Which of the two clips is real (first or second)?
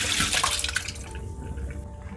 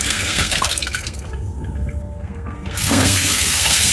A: first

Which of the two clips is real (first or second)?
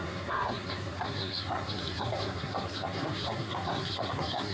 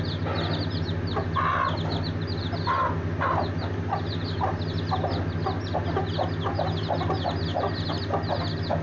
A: second